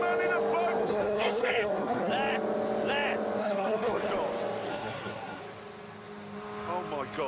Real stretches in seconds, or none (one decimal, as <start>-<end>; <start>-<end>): 0.0-0.8; 2.1-3.4; 4.1-4.7; 5.4-7.3